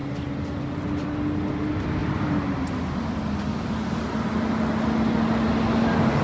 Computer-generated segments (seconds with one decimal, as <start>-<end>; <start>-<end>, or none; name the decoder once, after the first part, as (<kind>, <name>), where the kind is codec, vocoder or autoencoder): none